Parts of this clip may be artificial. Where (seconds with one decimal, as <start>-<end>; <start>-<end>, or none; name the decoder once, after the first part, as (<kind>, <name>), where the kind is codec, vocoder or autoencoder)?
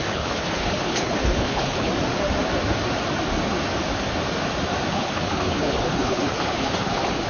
0.0-1.9 (codec, HILCodec); 4.9-7.3